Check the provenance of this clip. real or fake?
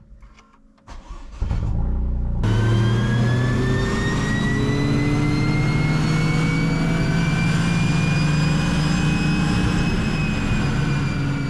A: real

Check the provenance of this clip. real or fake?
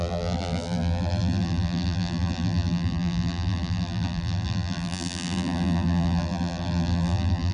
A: fake